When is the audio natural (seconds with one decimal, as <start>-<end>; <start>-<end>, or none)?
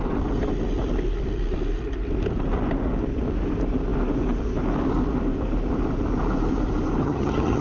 0.0-7.0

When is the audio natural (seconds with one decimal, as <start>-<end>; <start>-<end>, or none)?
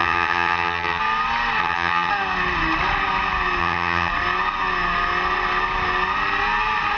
1.0-1.6; 2.1-3.6; 4.1-7.0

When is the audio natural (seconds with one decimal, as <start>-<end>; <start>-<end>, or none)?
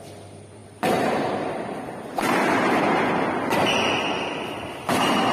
0.0-5.3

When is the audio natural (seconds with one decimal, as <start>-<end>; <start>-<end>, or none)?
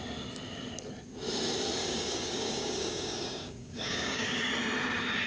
0.0-1.8; 4.5-5.3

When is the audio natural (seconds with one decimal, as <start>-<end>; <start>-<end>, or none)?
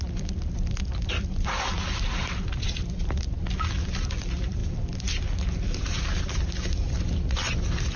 0.0-8.0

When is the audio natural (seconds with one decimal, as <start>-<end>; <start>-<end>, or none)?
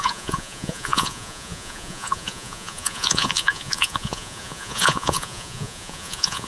none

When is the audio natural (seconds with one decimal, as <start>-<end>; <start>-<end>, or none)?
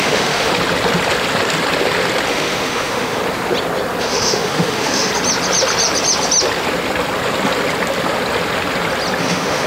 0.5-2.3; 3.2-4.0; 5.1-9.2